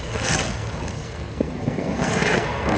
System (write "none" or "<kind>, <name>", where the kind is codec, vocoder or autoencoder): codec, SNAC